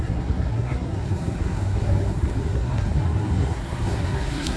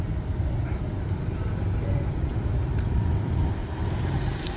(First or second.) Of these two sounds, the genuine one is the second